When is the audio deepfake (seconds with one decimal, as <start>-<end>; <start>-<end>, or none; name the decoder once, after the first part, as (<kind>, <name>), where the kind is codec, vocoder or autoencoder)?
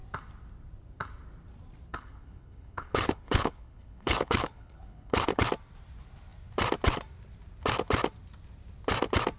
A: 1.9-5.4 (codec, HILCodec)